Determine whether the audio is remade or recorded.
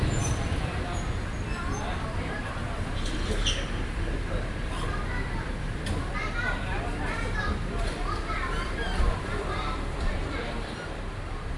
remade